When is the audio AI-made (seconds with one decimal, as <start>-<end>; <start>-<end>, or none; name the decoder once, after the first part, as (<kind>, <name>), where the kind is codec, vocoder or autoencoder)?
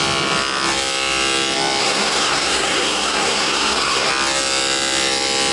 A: 1.8-4.1 (codec, SNAC)